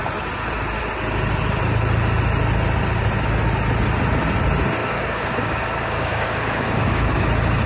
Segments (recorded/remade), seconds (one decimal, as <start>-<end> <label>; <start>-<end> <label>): 0.0-4.8 recorded; 4.8-7.3 remade; 7.3-7.7 recorded